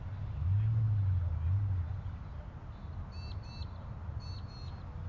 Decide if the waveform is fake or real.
real